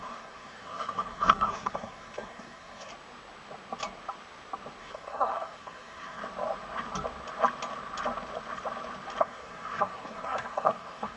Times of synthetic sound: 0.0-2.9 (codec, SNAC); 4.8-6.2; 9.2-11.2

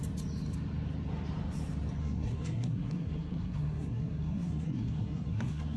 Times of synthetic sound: 2.0-5.8 (codec, SNAC)

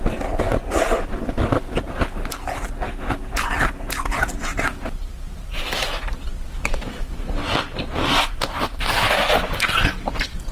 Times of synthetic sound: none

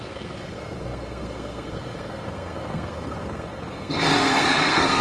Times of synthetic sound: 0.0-5.0 (codec, SNAC)

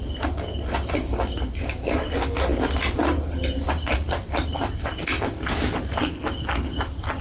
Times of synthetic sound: none

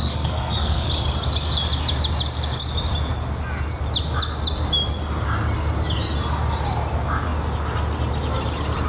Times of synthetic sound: 0.0-0.9 (codec, SNAC)